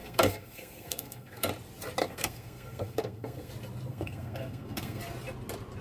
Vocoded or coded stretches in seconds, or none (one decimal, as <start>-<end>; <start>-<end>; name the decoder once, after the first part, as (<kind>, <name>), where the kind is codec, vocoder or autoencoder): 0.0-1.5 (codec, SNAC); 2.0-3.5; 3.9-5.0